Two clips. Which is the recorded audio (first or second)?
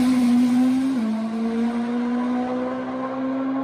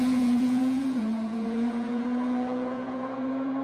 first